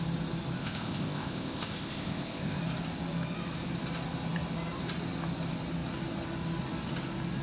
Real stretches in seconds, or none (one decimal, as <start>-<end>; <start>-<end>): 0.0-0.6; 2.6-7.4